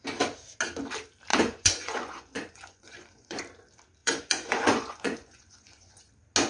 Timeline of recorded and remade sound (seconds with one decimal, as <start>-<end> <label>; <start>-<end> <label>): 0.0-1.3 recorded; 1.3-3.4 remade; 3.4-4.0 recorded; 4.0-6.1 remade; 6.1-6.5 recorded